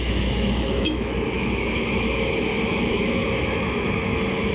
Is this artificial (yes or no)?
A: yes